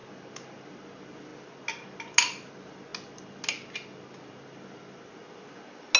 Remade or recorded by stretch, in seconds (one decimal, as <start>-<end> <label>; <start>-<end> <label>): 0.0-6.0 recorded